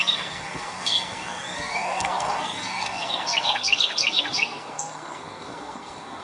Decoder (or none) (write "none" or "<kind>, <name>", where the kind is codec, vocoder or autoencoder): codec, SNAC